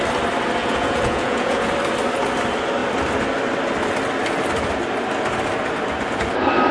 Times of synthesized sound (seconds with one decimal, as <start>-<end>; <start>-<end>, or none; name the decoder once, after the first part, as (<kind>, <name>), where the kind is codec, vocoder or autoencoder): 0.6-1.7 (vocoder, Vocos)